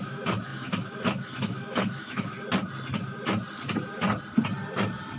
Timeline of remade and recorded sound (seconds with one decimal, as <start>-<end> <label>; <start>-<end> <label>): 0.0-2.3 remade; 2.3-5.2 recorded